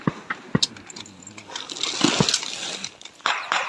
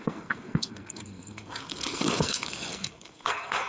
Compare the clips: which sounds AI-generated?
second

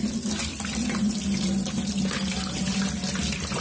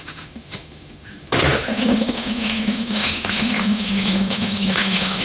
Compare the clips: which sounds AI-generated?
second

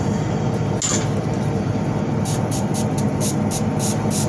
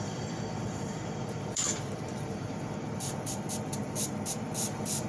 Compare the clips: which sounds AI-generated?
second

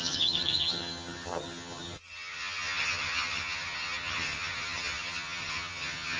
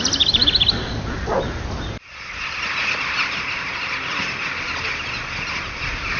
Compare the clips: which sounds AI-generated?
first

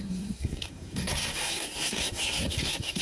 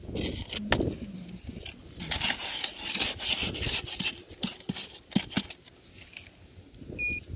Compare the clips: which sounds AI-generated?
first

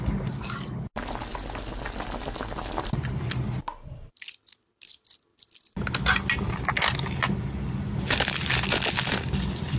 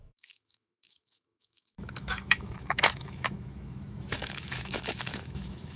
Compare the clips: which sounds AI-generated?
second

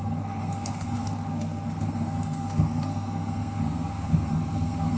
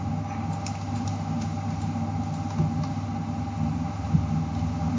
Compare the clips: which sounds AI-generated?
first